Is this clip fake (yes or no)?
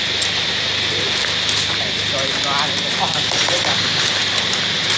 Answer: no